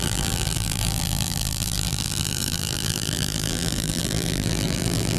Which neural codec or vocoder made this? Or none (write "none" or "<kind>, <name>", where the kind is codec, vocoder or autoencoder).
vocoder, BigVGAN v2